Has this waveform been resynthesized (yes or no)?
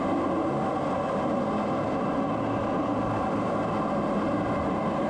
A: no